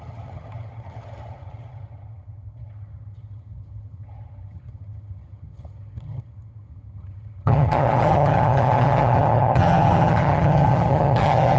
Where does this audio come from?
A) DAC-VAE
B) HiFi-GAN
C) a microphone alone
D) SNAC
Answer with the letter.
B